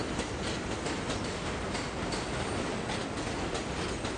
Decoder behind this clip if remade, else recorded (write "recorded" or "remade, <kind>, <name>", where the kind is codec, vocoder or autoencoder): recorded